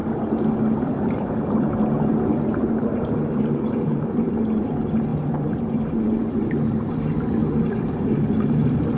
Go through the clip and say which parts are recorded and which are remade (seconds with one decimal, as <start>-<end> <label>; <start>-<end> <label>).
0.0-0.9 recorded; 0.9-9.0 remade